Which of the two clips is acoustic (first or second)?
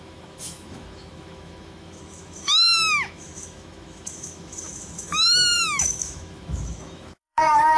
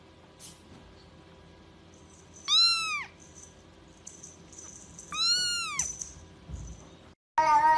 second